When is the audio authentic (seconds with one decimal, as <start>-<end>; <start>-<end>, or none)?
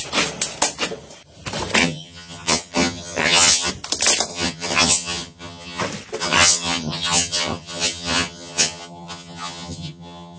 0.0-1.8; 3.7-4.3; 5.8-6.2